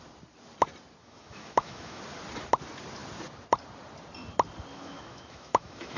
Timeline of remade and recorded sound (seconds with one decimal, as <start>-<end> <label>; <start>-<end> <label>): 0.0-1.0 recorded; 1.0-2.0 remade; 2.0-4.7 recorded; 4.7-6.0 remade

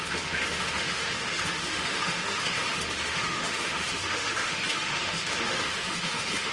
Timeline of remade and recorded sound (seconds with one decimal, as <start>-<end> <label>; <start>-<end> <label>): 0.0-6.5 remade

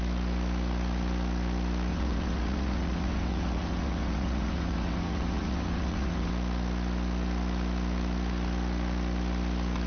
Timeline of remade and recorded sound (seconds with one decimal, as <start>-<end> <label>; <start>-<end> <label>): 0.0-1.9 recorded; 1.9-6.3 remade; 6.3-9.9 recorded